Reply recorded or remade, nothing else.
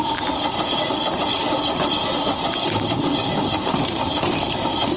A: recorded